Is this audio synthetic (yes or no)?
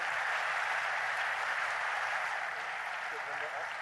no